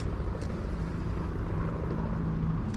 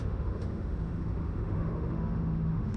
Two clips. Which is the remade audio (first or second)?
second